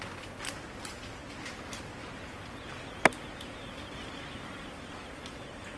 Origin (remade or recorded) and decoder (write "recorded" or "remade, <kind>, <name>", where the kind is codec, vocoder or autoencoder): recorded